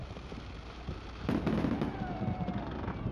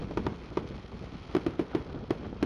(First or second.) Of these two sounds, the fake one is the first